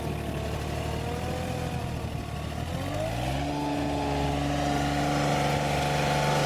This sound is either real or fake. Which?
real